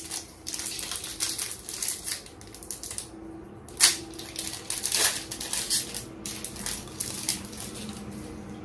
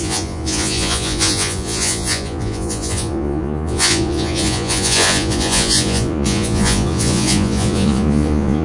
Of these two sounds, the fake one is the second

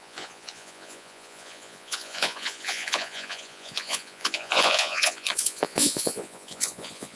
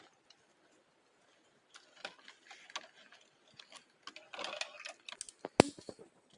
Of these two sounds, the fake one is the first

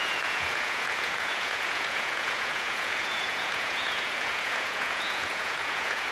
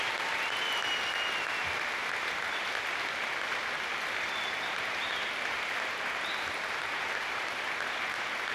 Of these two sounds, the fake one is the first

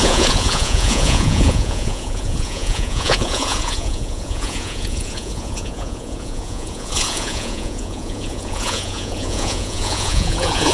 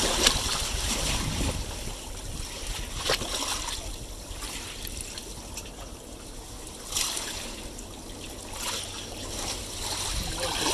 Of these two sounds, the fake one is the first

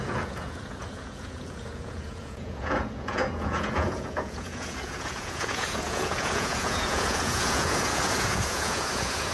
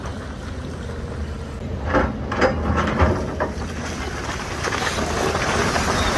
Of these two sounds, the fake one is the first